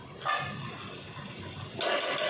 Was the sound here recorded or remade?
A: recorded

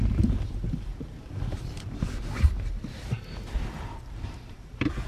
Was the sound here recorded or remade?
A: remade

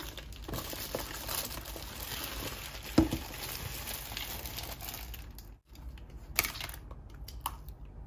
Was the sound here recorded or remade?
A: recorded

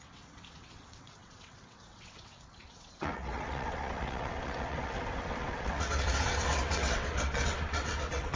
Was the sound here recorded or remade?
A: remade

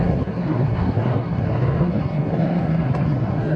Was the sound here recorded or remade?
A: remade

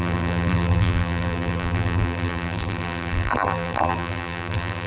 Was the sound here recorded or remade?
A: remade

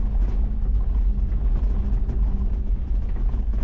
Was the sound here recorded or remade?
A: recorded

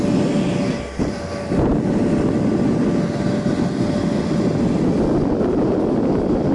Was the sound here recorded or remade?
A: recorded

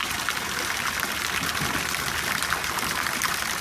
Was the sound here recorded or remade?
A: recorded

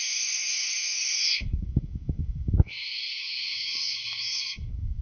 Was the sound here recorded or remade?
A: remade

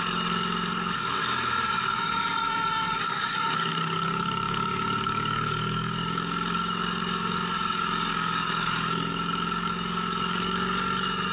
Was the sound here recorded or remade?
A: remade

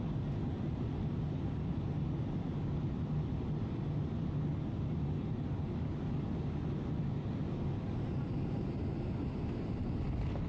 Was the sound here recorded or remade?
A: recorded